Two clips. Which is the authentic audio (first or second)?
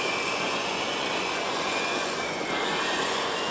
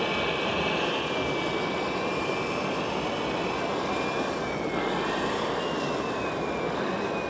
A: second